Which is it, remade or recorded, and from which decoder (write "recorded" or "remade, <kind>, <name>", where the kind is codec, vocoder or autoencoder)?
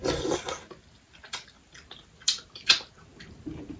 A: recorded